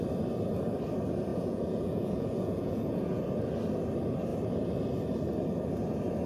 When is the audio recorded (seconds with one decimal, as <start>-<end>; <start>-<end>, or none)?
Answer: 0.0-1.3; 3.2-6.3